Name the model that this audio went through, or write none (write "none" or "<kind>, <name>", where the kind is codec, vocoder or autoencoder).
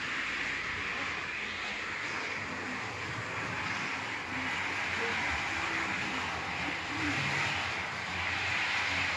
none